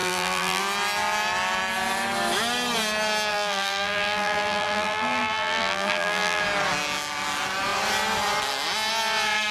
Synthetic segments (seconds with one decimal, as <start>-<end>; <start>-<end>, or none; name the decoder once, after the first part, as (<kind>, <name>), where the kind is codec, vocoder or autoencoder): 0.0-0.6 (vocoder, BigVGAN v2); 3.3-6.4

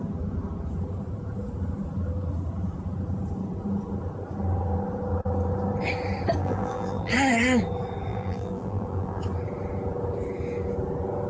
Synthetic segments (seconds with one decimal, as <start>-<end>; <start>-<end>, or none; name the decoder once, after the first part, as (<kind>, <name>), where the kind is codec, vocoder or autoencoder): 6.4-7.1 (vocoder, BigVGAN v2); 8.1-9.2

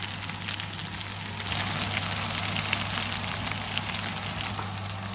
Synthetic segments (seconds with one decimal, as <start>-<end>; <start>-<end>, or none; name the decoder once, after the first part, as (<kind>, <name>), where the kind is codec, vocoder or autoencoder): none

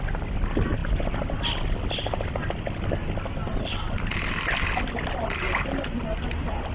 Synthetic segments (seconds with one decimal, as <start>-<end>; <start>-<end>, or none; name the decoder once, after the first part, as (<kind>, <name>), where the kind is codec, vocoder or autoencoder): none

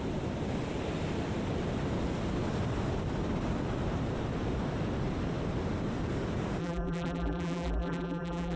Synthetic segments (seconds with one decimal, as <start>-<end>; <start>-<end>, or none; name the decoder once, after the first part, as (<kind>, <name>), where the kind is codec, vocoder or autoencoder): 6.6-8.6 (vocoder, BigVGAN v2)

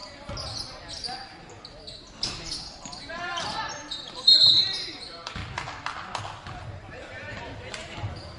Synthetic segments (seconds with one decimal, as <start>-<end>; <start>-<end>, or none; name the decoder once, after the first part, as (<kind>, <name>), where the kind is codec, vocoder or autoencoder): 2.3-5.4 (vocoder, BigVGAN v2); 6.4-8.4

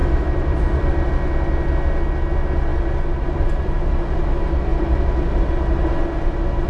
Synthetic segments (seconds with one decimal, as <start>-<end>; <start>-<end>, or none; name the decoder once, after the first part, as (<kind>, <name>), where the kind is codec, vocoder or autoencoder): 0.0-0.9 (vocoder, BigVGAN v2); 2.7-4.2

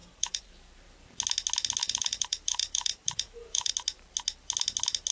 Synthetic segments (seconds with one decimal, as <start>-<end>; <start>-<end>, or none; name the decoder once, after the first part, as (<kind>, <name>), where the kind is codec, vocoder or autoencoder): 0.0-0.5 (vocoder, BigVGAN v2); 1.8-3.7